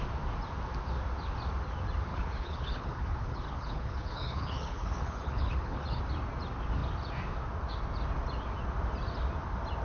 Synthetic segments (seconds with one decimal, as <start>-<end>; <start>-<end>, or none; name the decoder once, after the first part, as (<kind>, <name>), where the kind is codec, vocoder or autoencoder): 2.1-6.0 (codec, HILCodec)